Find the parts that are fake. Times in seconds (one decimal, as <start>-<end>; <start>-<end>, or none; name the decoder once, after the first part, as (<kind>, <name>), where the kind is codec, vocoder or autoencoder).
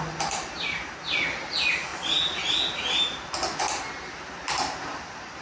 none